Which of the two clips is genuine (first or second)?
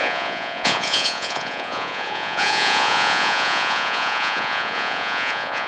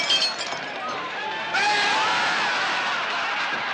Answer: second